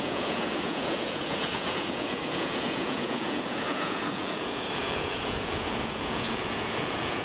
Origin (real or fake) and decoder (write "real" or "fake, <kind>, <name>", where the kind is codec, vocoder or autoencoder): fake, vocoder, Vocos